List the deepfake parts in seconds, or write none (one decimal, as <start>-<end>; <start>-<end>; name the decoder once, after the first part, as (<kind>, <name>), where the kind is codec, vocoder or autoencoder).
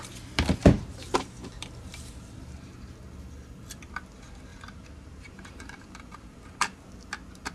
0.6-2.7 (vocoder, BigVGAN v2); 4.5-5.8